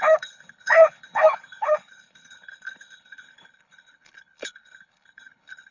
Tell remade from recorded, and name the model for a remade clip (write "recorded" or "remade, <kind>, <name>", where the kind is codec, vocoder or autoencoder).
remade, codec, HILCodec